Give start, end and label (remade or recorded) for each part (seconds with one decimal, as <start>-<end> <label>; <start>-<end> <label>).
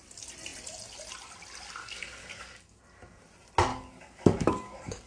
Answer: 0.0-1.8 recorded; 1.8-2.8 remade; 2.8-3.7 recorded; 3.7-5.1 remade